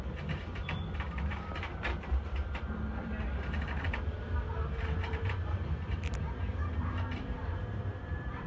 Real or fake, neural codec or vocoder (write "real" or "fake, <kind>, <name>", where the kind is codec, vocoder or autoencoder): fake, vocoder, BigVGAN v2